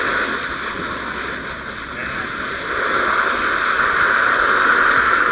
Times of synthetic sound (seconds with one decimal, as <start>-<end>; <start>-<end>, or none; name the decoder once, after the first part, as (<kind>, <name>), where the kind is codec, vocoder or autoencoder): none